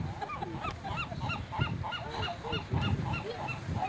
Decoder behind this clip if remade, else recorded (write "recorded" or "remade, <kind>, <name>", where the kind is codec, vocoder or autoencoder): recorded